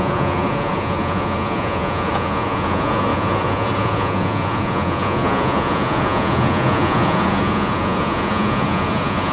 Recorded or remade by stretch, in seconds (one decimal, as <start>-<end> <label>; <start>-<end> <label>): 0.0-9.3 remade